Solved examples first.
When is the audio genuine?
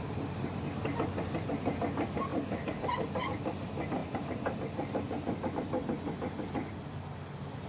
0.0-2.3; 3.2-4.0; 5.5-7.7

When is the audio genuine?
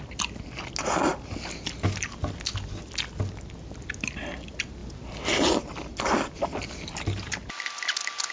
0.0-8.3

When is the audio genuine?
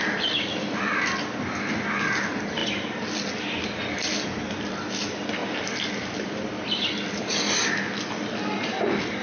0.0-9.2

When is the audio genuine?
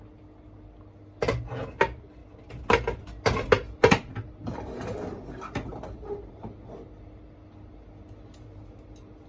0.0-9.3